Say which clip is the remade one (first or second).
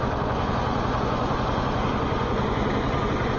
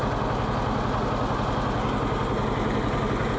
first